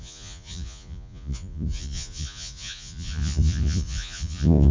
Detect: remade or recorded remade